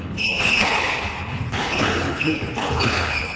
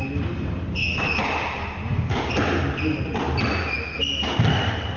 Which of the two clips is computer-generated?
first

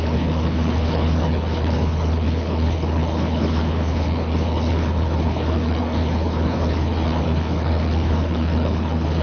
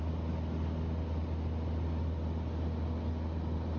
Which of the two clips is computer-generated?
first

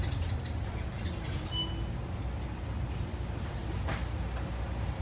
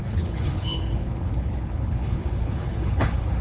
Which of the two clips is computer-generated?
second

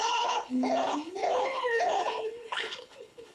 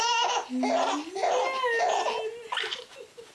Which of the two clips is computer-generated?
first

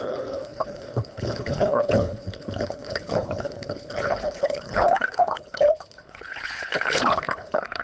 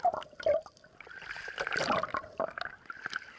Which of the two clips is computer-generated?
first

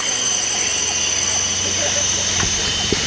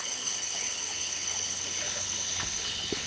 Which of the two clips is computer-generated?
second